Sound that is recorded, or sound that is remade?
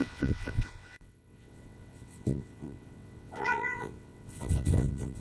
remade